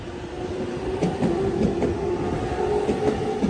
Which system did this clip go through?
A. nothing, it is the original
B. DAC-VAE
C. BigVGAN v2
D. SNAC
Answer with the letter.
A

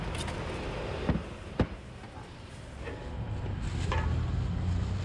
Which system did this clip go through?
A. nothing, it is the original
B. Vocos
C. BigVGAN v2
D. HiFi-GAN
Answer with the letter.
A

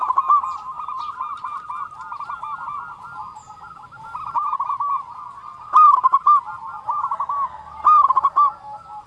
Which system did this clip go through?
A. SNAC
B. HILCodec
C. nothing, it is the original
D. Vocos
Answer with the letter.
C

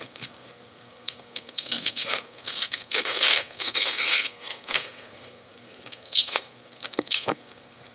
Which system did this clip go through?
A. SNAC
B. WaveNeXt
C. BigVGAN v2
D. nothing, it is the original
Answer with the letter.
A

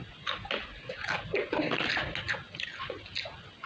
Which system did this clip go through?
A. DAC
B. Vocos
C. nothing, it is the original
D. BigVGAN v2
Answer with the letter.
C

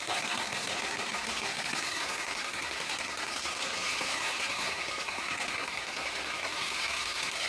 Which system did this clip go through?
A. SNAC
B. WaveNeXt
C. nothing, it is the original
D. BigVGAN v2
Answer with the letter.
A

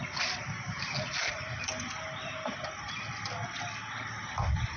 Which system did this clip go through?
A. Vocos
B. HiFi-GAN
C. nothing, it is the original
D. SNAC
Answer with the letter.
C